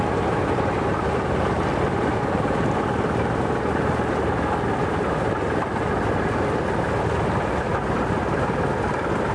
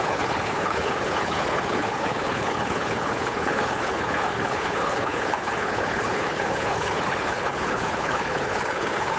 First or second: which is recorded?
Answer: first